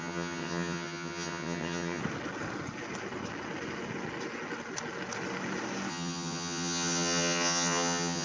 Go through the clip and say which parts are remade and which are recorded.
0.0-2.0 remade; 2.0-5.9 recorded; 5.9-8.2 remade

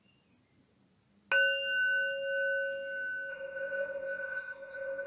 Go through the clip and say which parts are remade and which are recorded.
0.0-3.3 recorded; 3.3-5.1 remade